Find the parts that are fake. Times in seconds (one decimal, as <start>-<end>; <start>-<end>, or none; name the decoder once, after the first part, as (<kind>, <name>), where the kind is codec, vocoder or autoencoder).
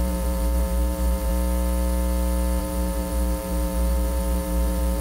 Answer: 0.0-1.3 (vocoder, BigVGAN v2); 2.6-5.0